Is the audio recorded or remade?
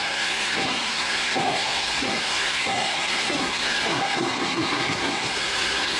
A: remade